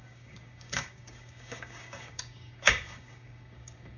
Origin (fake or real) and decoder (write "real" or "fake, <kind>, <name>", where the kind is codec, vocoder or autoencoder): fake, codec, DAC